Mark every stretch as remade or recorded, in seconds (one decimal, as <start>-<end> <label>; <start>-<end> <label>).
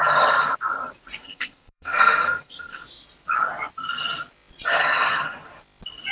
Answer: 0.0-1.2 recorded; 1.2-2.8 remade; 2.8-6.1 recorded